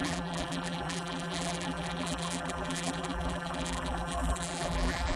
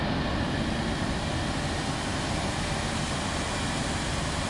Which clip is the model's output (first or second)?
first